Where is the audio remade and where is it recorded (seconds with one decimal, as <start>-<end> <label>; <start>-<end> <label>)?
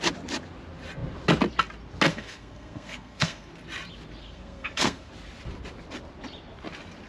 0.0-2.1 recorded; 2.1-3.5 remade; 3.5-4.2 recorded; 4.2-5.1 remade; 5.1-7.1 recorded